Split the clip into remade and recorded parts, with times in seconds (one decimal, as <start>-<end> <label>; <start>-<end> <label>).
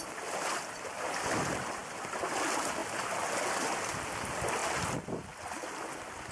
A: 0.0-6.3 recorded